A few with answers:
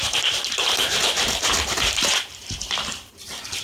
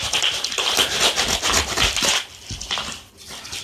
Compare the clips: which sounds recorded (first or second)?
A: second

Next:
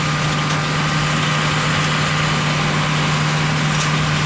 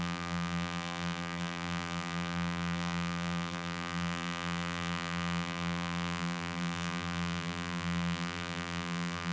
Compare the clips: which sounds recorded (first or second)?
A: first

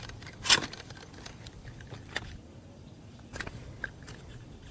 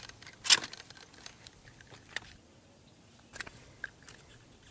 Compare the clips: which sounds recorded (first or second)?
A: second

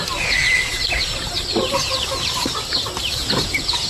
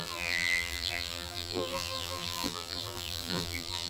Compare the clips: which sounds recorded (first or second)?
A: first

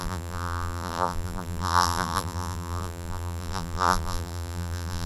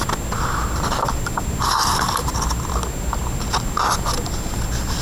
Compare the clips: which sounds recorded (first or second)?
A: second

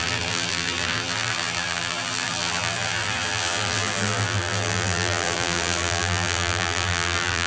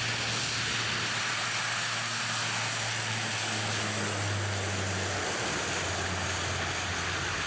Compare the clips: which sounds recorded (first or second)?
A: second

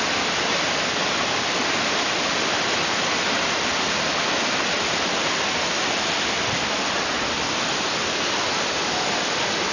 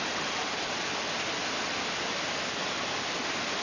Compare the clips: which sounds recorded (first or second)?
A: second